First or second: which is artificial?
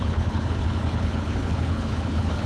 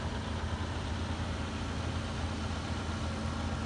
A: first